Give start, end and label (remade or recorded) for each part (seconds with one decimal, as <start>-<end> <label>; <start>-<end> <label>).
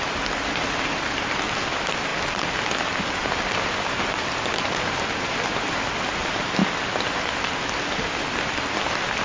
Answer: 0.0-9.2 recorded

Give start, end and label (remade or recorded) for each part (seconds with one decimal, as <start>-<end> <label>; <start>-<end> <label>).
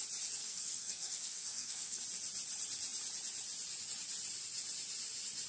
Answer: 0.0-0.4 recorded; 0.4-2.0 remade; 2.0-5.5 recorded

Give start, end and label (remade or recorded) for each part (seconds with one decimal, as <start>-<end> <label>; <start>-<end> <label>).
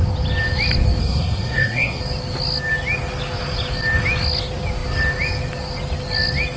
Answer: 0.0-1.0 recorded; 1.0-2.0 remade; 2.0-6.6 recorded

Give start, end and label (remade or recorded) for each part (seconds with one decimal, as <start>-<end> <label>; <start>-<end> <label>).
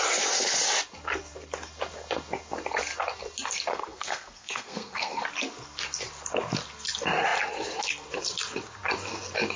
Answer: 0.0-3.7 recorded; 3.7-5.2 remade; 5.2-9.6 recorded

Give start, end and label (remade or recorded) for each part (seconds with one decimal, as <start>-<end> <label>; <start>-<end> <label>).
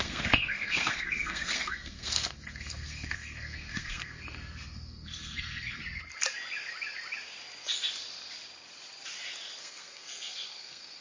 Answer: 0.0-5.8 remade; 5.8-9.6 recorded; 9.6-11.0 remade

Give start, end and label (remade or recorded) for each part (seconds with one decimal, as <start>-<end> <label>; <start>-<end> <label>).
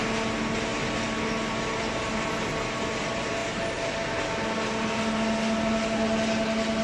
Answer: 0.0-6.8 recorded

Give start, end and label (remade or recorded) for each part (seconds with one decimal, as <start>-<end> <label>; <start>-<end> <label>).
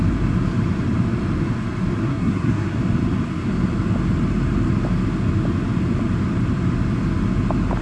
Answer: 0.0-2.0 recorded; 2.0-2.8 remade; 2.8-7.8 recorded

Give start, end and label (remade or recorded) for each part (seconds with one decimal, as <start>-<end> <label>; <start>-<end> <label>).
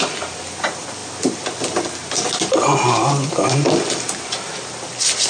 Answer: 0.0-5.3 recorded